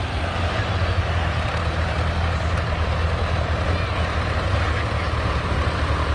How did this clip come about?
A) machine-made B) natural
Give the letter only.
B